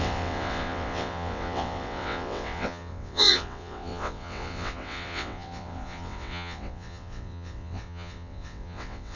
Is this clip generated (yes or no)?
yes